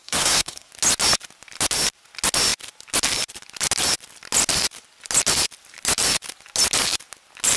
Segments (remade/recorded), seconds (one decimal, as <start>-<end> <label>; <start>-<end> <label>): 0.0-0.7 remade; 0.7-7.6 recorded